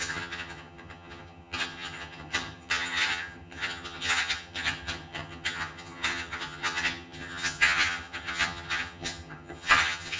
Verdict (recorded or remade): remade